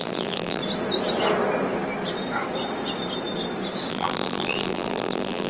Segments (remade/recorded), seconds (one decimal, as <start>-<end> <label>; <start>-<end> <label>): 0.0-0.6 remade; 0.6-3.9 recorded; 3.9-5.5 remade